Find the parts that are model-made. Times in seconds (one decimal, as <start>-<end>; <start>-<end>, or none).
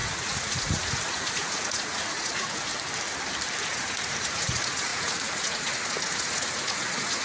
0.0-2.7; 3.6-7.2